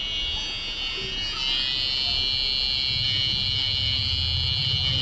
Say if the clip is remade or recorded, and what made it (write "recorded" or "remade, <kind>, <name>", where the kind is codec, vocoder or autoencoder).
recorded